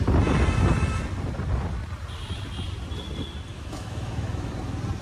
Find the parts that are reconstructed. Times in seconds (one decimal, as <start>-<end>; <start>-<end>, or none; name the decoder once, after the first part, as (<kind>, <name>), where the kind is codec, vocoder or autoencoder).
3.5-4.5 (autoencoder, DAC-VAE)